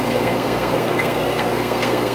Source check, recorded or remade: remade